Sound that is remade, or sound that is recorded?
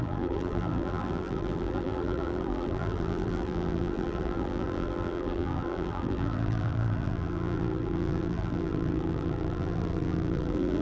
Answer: remade